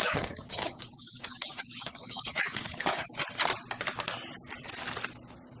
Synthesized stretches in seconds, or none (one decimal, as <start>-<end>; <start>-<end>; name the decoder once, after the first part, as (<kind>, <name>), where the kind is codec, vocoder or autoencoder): 0.0-3.2 (codec, DAC)